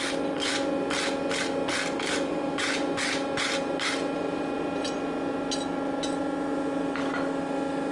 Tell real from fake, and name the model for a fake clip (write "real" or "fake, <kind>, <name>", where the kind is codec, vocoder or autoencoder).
real